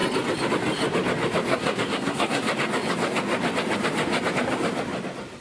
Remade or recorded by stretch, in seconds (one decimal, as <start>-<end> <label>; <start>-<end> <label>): 0.0-1.5 recorded; 1.5-2.4 remade; 2.4-5.4 recorded